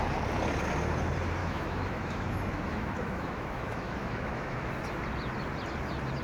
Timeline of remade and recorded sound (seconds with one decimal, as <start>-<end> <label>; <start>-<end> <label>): 0.0-1.4 recorded; 1.4-4.7 remade; 4.7-6.2 recorded